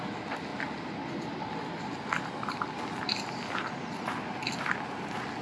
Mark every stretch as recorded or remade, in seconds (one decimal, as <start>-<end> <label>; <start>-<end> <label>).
0.0-5.4 recorded